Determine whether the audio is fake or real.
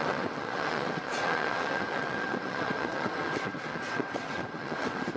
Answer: fake